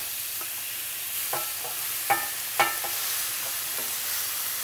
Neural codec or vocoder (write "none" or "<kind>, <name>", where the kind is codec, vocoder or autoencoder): none